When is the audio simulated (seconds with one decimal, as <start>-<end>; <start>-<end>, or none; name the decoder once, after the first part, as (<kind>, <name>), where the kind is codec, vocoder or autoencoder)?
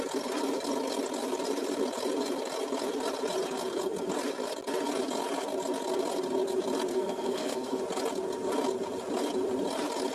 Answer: 6.9-7.8 (codec, SNAC)